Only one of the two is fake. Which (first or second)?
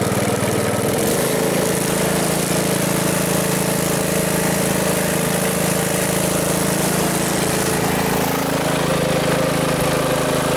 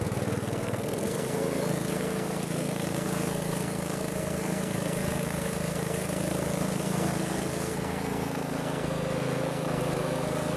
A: second